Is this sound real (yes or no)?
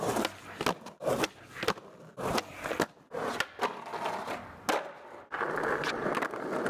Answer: yes